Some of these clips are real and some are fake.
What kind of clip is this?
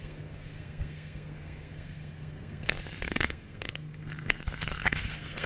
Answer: fake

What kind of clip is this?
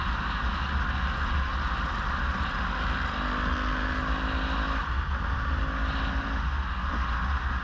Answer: real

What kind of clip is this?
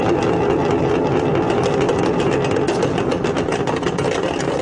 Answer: real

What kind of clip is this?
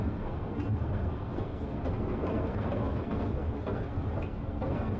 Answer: fake